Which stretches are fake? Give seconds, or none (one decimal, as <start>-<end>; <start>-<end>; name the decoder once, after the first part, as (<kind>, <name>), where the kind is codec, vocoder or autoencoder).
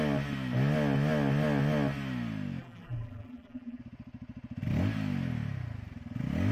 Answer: 2.6-3.8 (vocoder, BigVGAN v2)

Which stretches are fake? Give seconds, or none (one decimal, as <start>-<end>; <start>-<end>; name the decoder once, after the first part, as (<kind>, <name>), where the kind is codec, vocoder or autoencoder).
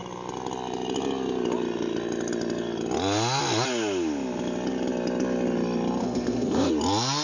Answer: 6.0-6.7 (codec, SNAC)